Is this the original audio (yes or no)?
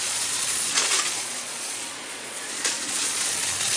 no